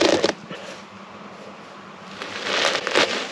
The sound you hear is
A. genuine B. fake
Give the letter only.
A